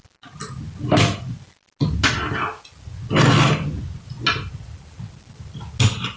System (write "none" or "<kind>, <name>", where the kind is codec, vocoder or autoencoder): none